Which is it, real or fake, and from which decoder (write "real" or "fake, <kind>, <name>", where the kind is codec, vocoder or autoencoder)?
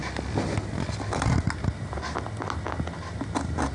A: real